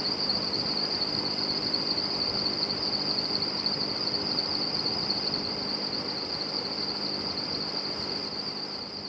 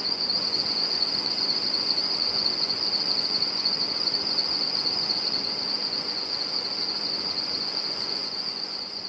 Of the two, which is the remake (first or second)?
second